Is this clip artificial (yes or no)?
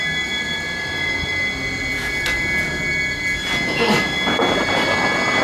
no